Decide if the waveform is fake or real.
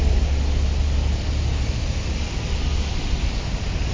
real